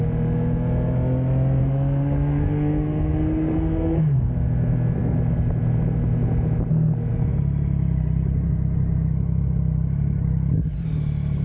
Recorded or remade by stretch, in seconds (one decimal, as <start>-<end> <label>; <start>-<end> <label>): 0.0-1.6 recorded; 1.6-4.3 remade; 4.3-11.4 recorded